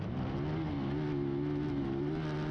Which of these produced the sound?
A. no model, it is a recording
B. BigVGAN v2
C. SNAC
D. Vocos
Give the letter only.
A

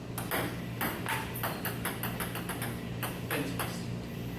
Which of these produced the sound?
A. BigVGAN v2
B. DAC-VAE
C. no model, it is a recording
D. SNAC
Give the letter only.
C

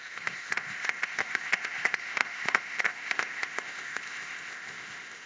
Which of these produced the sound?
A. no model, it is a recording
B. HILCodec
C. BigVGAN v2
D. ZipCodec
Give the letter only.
D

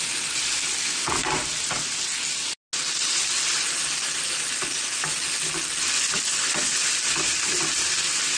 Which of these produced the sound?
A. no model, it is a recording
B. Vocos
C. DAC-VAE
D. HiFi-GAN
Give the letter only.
A